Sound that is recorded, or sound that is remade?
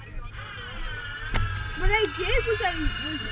recorded